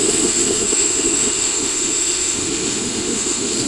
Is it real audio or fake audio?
fake